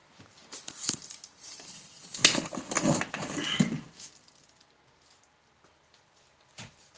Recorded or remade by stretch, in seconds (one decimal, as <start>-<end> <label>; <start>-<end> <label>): 0.0-2.2 remade; 2.2-5.3 recorded; 5.3-7.0 remade